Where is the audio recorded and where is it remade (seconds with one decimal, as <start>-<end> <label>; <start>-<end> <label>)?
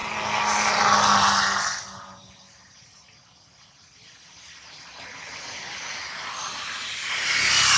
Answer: 0.0-7.8 recorded